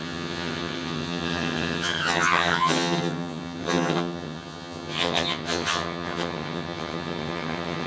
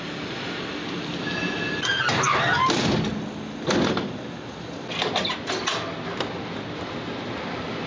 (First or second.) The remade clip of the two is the first